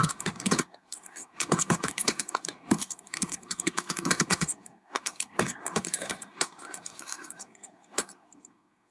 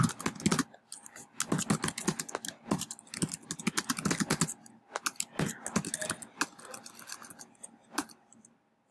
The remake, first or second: first